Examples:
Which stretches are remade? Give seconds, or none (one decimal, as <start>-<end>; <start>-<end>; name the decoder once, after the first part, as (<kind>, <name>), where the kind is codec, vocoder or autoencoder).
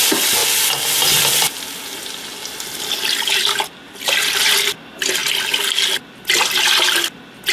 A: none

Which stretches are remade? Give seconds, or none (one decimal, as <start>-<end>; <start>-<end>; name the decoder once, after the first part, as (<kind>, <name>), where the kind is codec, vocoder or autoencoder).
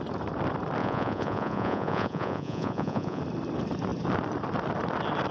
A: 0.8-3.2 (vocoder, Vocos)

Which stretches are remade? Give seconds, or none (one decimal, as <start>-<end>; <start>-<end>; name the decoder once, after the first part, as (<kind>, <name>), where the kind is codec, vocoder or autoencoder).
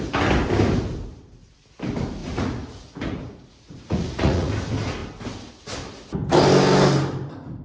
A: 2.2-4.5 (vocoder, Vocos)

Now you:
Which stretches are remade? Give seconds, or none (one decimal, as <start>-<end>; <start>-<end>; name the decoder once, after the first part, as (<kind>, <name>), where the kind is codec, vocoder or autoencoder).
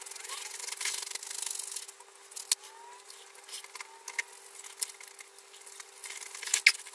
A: none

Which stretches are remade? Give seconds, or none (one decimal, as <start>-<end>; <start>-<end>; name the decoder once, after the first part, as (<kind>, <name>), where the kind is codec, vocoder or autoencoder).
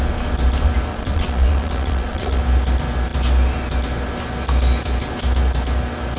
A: 0.9-2.4 (vocoder, Vocos)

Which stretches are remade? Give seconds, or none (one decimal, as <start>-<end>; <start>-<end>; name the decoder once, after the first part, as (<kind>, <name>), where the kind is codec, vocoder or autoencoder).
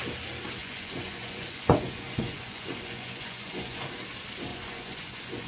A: 0.6-3.9 (vocoder, Vocos); 4.5-5.5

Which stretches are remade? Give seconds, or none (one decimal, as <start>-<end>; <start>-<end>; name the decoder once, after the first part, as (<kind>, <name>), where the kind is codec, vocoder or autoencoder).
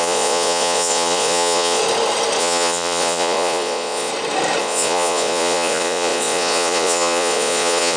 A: 0.0-1.8 (vocoder, Vocos); 2.4-4.1; 4.6-8.0